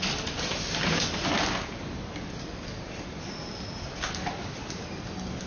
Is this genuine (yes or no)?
yes